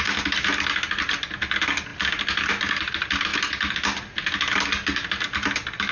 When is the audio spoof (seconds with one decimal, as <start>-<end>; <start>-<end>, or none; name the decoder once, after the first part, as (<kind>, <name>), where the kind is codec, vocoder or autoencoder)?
none